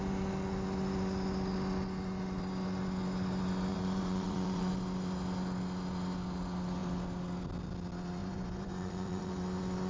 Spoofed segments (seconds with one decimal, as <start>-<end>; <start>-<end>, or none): 3.7-4.7; 8.2-9.3